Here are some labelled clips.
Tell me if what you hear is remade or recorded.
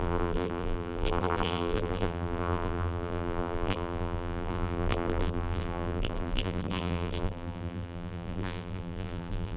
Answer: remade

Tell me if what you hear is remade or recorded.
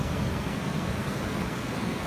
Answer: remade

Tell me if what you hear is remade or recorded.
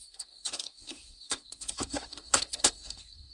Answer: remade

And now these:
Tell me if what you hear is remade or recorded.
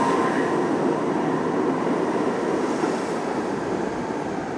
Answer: recorded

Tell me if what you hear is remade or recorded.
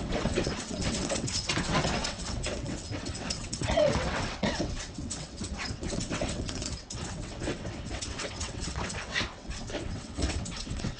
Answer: remade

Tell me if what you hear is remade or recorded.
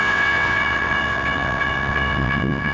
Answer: remade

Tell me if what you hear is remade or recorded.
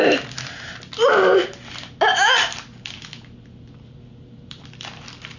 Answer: recorded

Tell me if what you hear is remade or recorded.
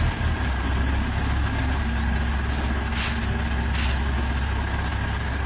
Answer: recorded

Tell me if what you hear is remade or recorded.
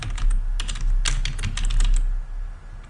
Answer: recorded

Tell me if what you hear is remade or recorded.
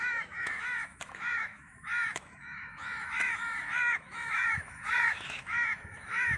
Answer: remade